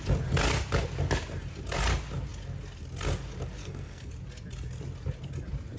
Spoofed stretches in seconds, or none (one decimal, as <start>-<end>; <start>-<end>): 3.6-4.1